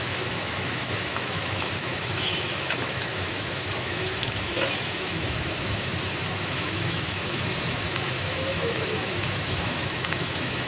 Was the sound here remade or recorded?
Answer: remade